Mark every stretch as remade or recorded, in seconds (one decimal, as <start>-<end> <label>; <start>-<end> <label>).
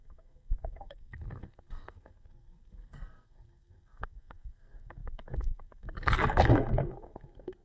0.0-7.6 remade